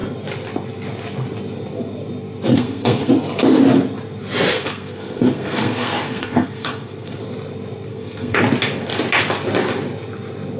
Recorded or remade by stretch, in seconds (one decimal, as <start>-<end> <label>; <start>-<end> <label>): 0.0-2.5 recorded; 2.5-3.1 remade; 3.1-4.5 recorded; 4.5-7.2 remade; 7.2-7.9 recorded; 7.9-8.4 remade; 8.4-10.6 recorded